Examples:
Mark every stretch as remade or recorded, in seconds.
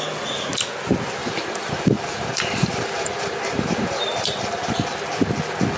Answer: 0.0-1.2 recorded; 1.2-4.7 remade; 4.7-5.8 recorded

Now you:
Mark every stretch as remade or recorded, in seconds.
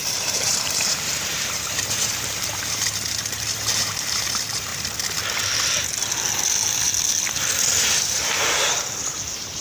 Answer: 0.0-4.7 remade; 4.7-7.9 recorded; 7.9-9.6 remade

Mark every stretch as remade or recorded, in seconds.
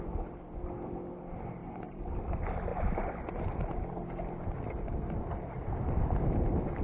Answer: 0.0-1.6 recorded; 1.6-2.1 remade; 2.1-6.8 recorded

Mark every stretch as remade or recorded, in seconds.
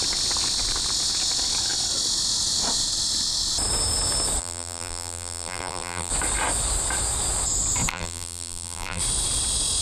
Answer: 0.0-4.4 recorded; 4.4-6.1 remade; 6.1-7.9 recorded; 7.9-9.0 remade; 9.0-9.8 recorded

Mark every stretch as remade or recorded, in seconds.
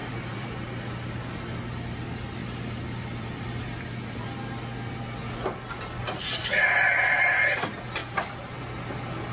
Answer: 0.0-0.5 remade; 0.5-2.4 recorded; 2.4-4.3 remade; 4.3-8.0 recorded; 8.0-8.6 remade; 8.6-9.3 recorded